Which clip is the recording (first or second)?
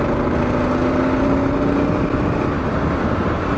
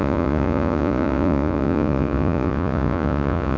first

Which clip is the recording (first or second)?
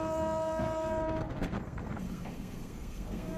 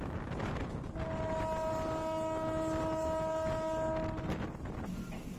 second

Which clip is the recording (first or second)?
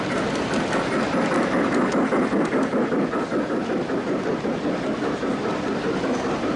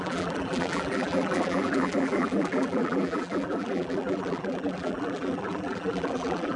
first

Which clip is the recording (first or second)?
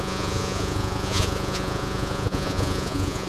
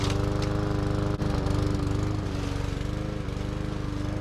second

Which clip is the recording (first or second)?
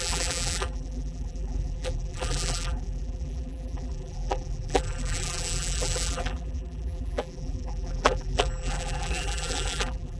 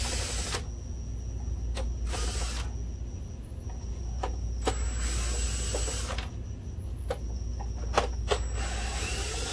second